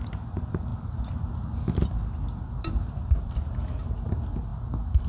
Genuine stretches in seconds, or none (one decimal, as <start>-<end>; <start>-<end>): 0.0-5.1